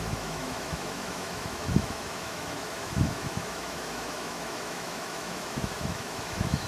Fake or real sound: fake